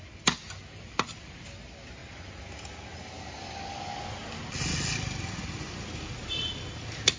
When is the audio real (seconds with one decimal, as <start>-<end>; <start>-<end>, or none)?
0.0-7.2